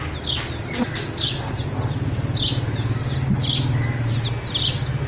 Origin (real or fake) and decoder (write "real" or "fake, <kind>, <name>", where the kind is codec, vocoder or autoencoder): real